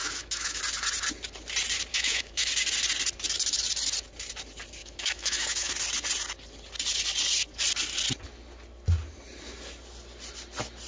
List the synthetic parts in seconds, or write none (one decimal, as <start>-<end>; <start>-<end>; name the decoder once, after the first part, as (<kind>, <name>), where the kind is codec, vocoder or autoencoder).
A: 0.0-0.6 (autoencoder, DAC-VAE); 1.9-2.5; 4.8-5.7